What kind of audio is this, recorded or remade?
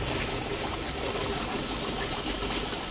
recorded